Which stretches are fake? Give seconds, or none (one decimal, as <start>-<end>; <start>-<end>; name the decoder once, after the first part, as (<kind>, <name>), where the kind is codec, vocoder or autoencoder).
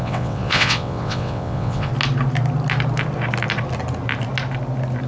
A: 0.0-1.9 (vocoder, WaveNeXt)